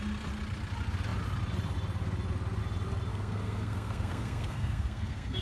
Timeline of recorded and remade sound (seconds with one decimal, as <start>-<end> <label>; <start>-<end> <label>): 0.0-3.1 recorded; 3.1-5.4 remade